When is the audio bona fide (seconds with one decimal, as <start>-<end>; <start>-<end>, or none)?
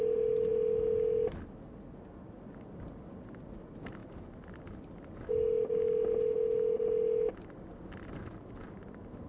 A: 0.0-9.3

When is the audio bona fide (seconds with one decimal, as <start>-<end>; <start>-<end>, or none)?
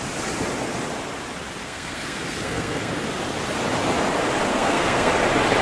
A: 0.0-1.6; 2.9-4.5; 5.1-5.6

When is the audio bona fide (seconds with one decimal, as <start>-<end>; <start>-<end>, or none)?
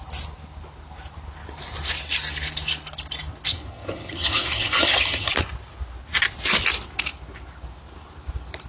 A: 0.0-3.5; 5.3-8.7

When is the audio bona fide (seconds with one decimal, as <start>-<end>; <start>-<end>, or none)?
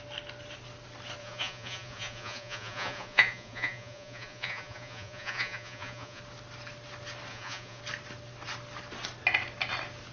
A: 0.0-1.2; 6.2-7.3; 7.8-10.1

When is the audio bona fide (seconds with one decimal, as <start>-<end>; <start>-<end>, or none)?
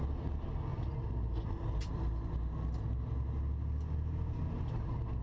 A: 0.0-0.7; 2.3-5.2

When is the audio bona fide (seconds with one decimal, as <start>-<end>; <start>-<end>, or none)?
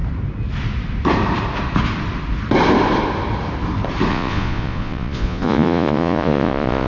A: 0.0-4.1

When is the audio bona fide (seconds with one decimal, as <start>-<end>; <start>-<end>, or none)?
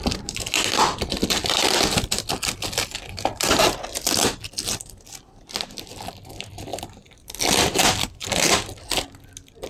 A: 0.0-0.9; 1.8-6.7; 7.6-9.7